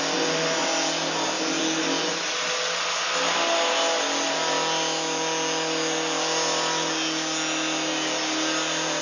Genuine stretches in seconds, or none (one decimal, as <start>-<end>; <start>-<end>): 0.0-9.0